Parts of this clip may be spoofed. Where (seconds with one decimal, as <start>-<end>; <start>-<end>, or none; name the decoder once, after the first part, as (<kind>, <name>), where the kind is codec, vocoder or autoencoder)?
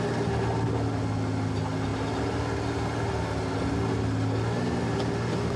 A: none